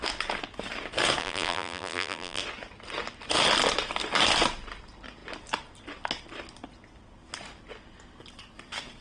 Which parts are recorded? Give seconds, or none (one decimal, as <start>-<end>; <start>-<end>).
0.0-1.2; 2.4-9.0